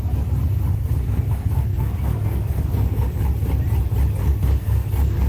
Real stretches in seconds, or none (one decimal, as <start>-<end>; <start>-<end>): 0.0-0.7; 3.1-4.2

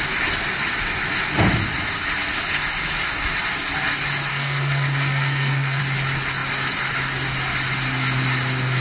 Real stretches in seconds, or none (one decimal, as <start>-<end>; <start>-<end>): 0.0-4.3; 5.8-8.8

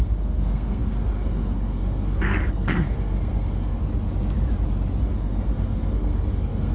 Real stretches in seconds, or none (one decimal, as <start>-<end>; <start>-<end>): 3.8-5.0

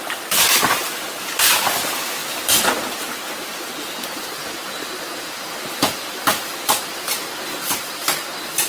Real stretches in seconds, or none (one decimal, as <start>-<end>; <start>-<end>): 0.0-8.7

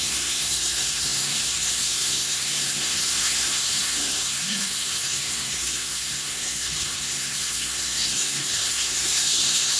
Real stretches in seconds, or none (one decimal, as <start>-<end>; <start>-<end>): none

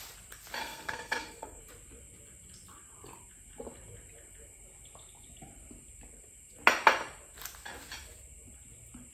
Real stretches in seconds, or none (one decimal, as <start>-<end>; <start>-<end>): 0.0-0.6; 1.6-9.1

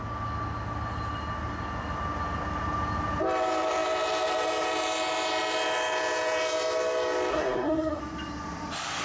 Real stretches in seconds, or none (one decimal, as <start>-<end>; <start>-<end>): 0.0-7.3; 8.0-9.0

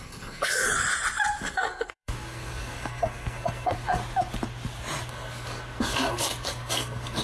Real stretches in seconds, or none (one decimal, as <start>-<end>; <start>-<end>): 0.7-1.4; 4.0-5.1